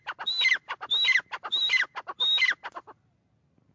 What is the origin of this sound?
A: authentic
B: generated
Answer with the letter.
A